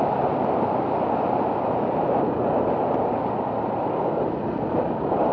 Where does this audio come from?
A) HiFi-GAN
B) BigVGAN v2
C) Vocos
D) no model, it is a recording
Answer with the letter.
D